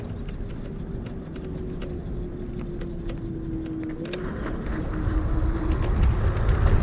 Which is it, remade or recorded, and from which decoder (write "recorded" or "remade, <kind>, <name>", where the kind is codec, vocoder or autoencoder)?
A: recorded